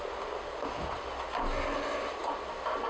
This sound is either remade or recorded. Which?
recorded